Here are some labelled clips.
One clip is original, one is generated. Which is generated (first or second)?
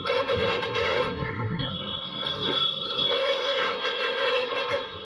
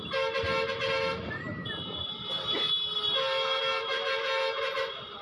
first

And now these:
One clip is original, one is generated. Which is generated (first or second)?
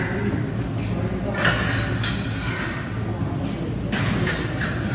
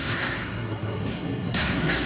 second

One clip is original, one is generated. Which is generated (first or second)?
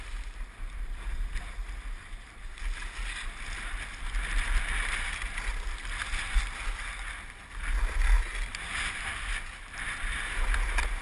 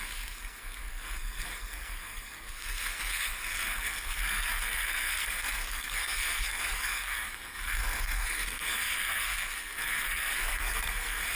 second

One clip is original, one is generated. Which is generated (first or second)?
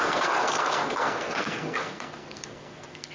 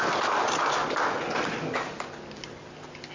first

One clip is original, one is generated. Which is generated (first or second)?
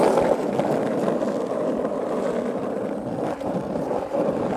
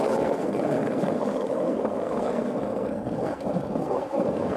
second